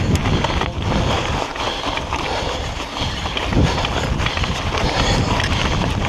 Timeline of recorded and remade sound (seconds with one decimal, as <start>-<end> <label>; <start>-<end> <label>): 0.0-6.1 recorded